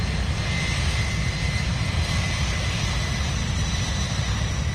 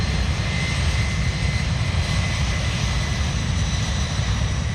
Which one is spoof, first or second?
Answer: second